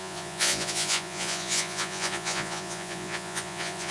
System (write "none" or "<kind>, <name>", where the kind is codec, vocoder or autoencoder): vocoder, Vocos